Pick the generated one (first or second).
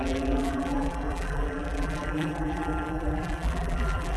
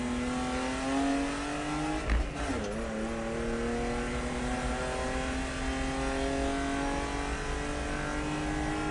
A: first